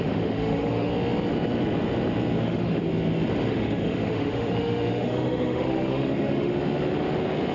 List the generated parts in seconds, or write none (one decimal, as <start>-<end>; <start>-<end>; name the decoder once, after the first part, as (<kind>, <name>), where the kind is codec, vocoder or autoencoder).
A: 0.0-0.9 (autoencoder, DAC-VAE); 2.4-2.8; 3.5-6.5